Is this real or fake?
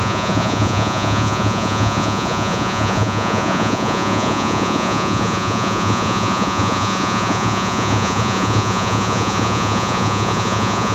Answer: fake